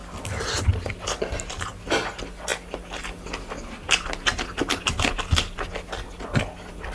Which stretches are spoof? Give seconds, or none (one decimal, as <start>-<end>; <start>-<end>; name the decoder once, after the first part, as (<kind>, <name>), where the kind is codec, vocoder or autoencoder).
none